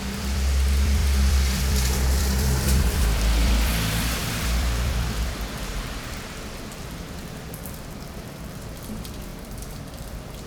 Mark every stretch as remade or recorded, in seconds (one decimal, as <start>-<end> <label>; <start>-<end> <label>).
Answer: 0.0-10.5 remade